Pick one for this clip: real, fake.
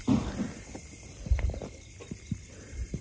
real